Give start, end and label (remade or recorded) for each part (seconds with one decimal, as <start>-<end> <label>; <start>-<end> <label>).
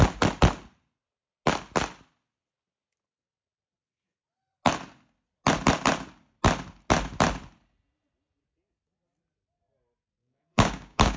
0.0-10.2 recorded; 10.2-11.2 remade